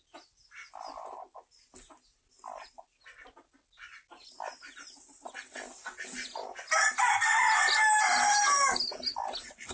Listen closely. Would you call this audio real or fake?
real